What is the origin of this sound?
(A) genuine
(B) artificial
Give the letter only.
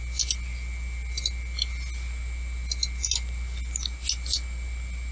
A